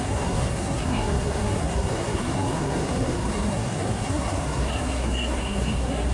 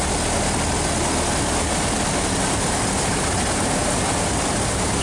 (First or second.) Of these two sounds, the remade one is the first